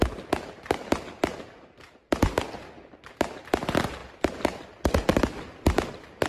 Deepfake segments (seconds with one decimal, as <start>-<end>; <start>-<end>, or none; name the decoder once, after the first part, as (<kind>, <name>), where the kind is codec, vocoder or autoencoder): none